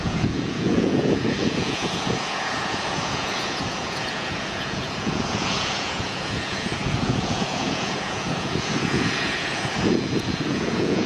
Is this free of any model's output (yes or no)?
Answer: no